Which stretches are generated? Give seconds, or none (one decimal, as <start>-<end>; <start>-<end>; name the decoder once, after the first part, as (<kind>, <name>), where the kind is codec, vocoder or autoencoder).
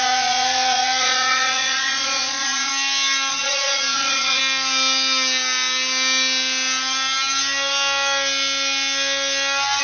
0.0-2.7 (vocoder, Vocos); 3.3-4.4